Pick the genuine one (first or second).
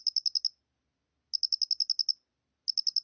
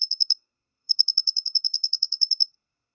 first